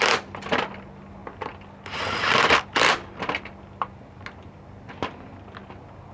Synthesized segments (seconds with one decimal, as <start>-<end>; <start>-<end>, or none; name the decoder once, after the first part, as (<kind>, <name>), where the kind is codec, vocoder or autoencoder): none